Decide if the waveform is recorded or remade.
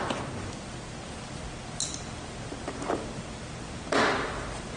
recorded